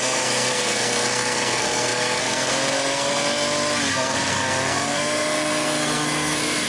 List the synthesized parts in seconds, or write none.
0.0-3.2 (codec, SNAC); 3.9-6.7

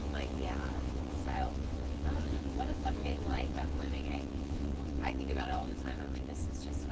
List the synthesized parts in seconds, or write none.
0.0-6.9 (vocoder, WaveNeXt)

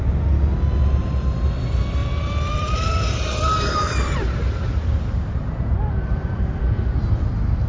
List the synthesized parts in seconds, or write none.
2.0-6.6 (vocoder, BigVGAN v2)